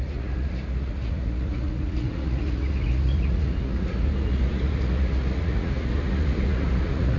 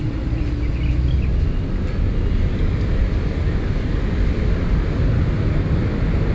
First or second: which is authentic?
second